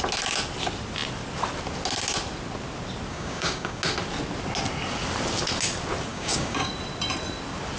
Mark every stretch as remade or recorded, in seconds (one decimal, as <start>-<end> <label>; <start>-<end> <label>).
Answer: 0.0-3.1 recorded; 3.1-3.8 remade; 3.8-6.1 recorded; 6.1-6.7 remade; 6.7-7.8 recorded